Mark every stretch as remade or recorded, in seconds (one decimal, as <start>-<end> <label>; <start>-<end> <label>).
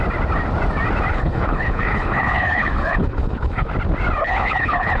0.0-1.1 recorded; 1.1-3.7 remade; 3.7-4.2 recorded; 4.2-5.0 remade